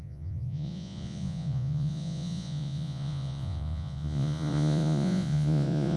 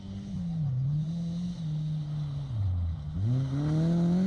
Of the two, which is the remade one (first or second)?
first